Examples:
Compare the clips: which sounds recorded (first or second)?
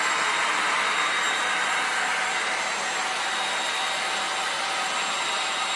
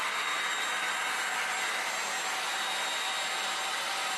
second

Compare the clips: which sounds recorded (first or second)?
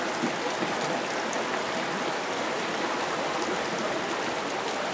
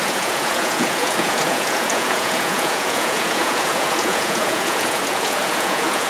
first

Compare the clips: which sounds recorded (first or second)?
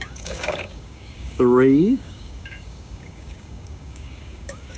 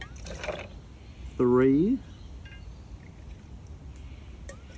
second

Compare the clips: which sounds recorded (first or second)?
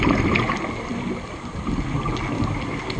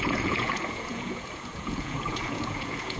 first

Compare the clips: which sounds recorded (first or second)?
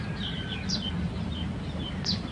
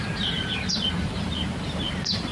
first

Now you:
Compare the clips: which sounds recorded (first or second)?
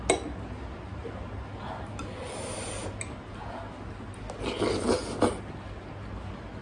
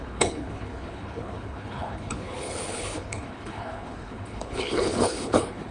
first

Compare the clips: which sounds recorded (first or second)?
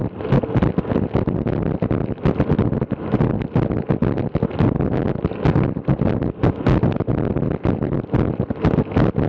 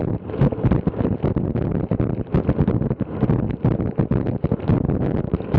first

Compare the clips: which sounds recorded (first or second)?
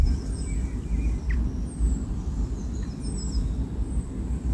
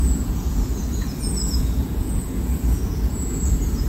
first